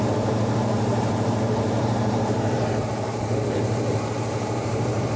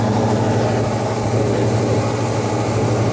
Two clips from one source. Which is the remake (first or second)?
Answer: first